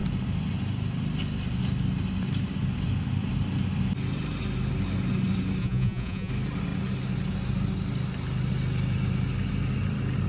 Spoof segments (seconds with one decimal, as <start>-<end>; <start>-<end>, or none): 5.6-6.3